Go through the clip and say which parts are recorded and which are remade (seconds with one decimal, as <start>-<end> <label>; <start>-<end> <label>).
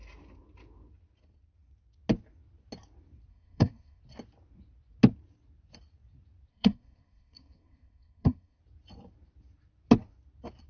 0.0-3.3 recorded; 3.3-4.0 remade; 4.0-6.5 recorded; 6.5-8.6 remade; 8.6-10.7 recorded